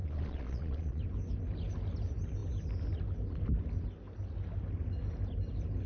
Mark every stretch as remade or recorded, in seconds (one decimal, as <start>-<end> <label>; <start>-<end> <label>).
0.0-1.0 remade; 1.0-5.9 recorded